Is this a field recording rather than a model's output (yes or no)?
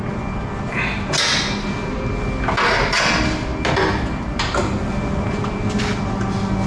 yes